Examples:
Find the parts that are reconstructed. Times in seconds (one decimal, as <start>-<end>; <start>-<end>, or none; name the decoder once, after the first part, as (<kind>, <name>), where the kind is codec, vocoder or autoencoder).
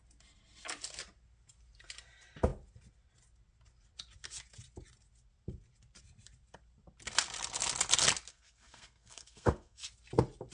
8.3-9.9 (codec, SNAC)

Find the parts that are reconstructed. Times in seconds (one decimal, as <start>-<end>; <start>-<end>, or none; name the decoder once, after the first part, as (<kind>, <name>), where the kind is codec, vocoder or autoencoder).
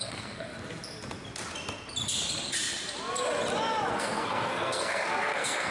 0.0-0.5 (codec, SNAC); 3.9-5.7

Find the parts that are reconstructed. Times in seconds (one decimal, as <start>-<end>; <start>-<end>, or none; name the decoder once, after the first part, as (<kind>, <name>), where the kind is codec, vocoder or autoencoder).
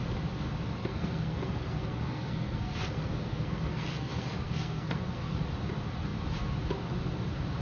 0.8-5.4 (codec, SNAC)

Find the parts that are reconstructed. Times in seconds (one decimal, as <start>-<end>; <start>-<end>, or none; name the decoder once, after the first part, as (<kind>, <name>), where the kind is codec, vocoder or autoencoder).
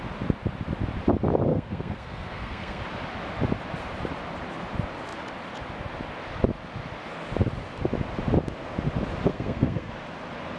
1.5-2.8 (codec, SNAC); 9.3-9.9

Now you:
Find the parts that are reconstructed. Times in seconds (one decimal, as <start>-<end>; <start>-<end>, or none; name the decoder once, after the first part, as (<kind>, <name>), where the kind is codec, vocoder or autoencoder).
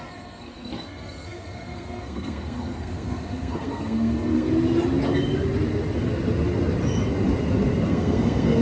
0.0-4.5 (codec, SNAC); 7.9-8.6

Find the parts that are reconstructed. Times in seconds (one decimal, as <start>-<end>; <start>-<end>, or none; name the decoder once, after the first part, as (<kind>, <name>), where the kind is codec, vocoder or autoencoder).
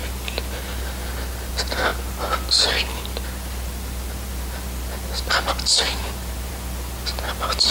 none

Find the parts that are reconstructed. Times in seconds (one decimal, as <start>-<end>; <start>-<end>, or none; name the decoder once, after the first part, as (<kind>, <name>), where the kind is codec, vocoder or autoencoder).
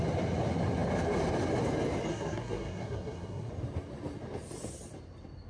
2.1-3.5 (codec, SNAC)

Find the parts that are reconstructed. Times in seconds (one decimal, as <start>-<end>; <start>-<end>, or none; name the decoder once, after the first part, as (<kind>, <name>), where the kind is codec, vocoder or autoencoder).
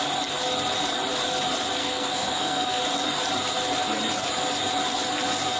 1.8-2.8 (codec, SNAC)